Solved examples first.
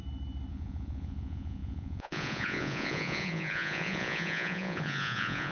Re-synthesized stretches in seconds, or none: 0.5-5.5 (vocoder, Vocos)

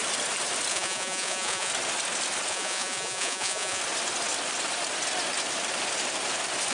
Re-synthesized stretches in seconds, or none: 0.7-1.7 (vocoder, Vocos); 2.5-3.8

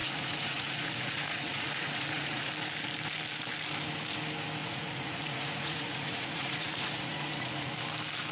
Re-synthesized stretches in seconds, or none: 0.0-2.5 (vocoder, Vocos); 4.6-7.7